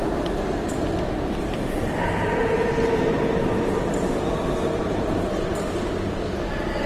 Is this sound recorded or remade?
recorded